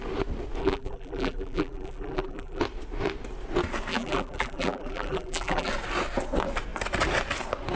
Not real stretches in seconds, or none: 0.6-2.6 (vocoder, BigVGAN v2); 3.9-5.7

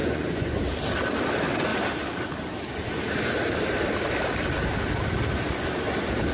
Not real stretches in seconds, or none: 0.0-0.6 (vocoder, Vocos)

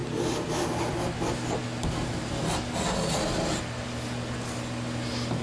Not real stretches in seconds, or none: none

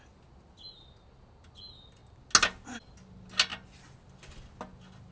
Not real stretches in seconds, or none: none

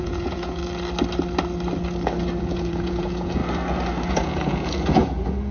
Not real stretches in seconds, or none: 0.0-0.6 (vocoder, Vocos); 2.4-3.4; 4.1-5.5

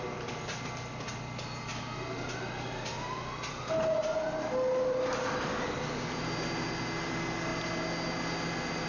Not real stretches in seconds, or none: none

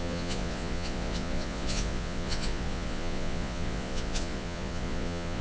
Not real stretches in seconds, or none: 0.0-5.4 (vocoder, Vocos)